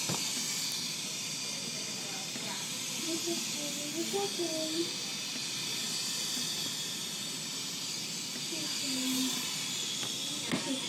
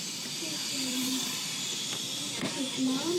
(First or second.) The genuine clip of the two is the first